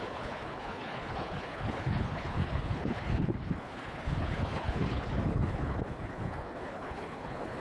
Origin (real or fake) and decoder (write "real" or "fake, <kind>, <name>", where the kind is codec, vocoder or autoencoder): fake, codec, HILCodec